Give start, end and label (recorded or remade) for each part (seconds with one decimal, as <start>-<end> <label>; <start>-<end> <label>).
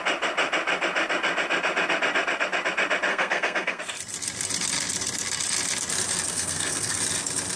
0.0-3.1 recorded; 3.1-3.8 remade; 3.8-6.3 recorded; 6.3-7.0 remade; 7.0-7.6 recorded